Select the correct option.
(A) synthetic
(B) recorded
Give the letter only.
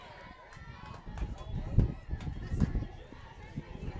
B